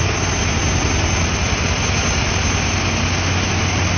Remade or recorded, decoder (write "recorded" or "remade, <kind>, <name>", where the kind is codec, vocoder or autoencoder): recorded